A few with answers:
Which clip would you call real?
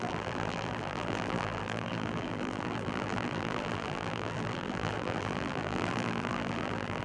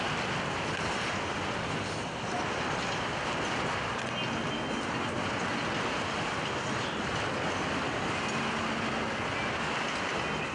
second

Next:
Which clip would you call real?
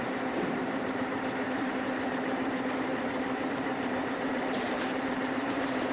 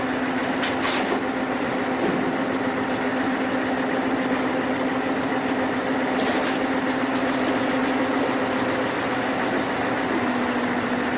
second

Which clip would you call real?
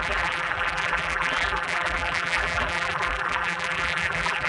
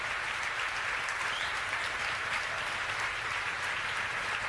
second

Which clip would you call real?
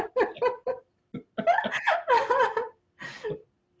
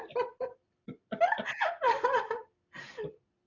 first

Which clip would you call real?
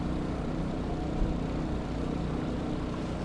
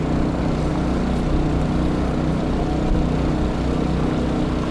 second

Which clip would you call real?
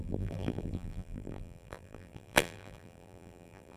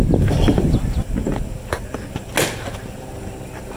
second